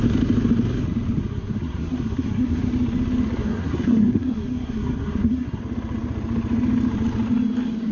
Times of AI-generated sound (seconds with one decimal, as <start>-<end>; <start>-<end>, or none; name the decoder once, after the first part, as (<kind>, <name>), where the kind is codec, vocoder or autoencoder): 1.2-2.7 (codec, SNAC); 3.4-5.6